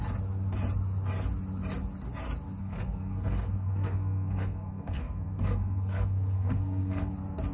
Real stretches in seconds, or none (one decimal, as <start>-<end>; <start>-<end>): 0.0-2.6; 7.1-7.5

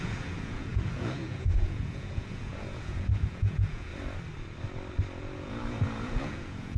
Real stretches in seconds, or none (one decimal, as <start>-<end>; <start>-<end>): 3.9-5.2

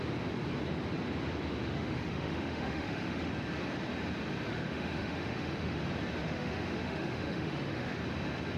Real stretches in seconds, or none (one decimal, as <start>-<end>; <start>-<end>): 0.0-1.6; 3.3-4.5; 5.8-6.2; 8.0-8.6

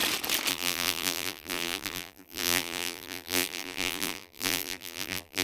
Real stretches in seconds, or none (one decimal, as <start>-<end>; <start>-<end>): 0.0-0.5

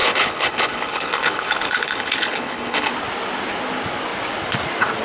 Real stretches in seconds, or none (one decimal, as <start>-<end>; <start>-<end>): 2.9-5.0

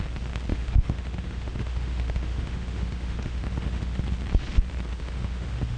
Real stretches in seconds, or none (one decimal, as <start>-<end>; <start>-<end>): 0.0-0.5; 4.0-4.9

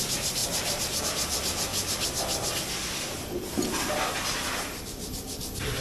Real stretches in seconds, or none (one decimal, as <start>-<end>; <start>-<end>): 1.7-4.8

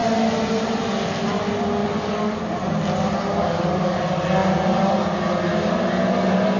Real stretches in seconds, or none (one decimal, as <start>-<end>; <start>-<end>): 0.0-1.8; 2.4-3.4; 4.0-6.6